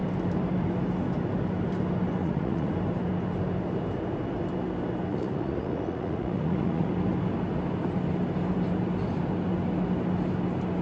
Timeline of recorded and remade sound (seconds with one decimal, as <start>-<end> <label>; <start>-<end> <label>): 0.0-2.2 recorded; 2.2-2.7 remade; 2.7-5.1 recorded; 5.1-6.9 remade; 6.9-10.8 recorded